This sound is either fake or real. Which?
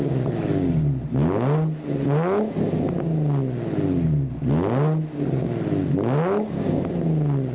real